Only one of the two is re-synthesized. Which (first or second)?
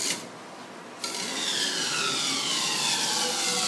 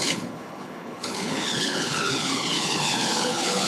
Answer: second